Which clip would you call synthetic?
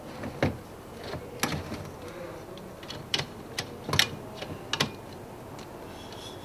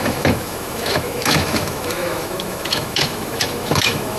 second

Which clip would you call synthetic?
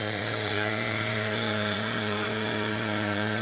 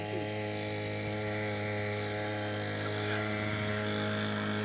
first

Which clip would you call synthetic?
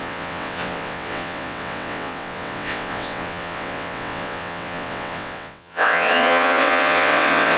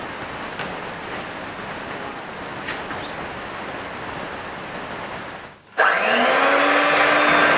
first